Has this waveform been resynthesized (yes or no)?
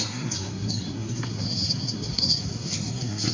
yes